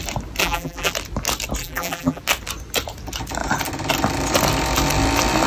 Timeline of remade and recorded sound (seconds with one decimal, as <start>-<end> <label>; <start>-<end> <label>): 0.0-0.4 recorded; 0.4-0.9 remade; 0.9-1.6 recorded; 1.6-2.2 remade; 2.2-5.5 recorded